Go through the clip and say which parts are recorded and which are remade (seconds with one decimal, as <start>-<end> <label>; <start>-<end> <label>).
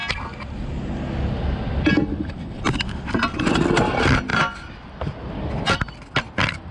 0.0-6.7 recorded